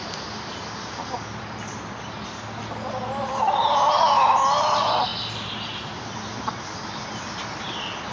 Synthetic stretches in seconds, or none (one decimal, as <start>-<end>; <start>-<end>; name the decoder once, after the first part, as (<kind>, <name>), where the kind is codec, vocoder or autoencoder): none